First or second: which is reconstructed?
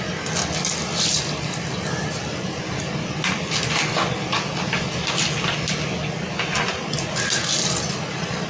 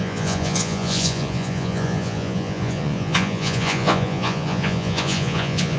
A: second